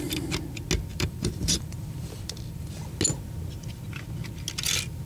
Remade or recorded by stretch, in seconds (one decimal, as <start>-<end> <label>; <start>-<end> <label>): 0.0-0.9 recorded; 0.9-2.7 remade; 2.7-5.1 recorded

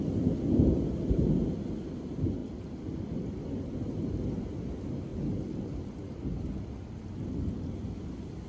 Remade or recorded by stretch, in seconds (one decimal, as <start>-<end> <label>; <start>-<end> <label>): 0.0-2.4 recorded; 2.4-3.4 remade; 3.4-8.5 recorded

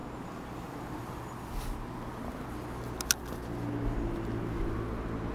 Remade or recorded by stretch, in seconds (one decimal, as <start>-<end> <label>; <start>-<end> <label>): 0.0-5.3 recorded

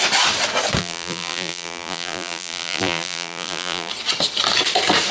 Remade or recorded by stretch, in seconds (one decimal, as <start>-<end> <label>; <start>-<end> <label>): 0.0-0.8 recorded; 0.8-3.9 remade; 3.9-5.1 recorded

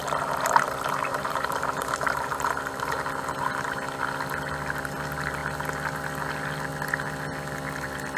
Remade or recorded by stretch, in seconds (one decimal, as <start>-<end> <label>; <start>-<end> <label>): 0.0-1.1 recorded; 1.1-3.0 remade; 3.0-8.2 recorded